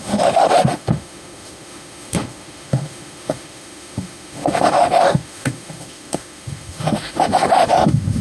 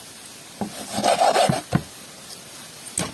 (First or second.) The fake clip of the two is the first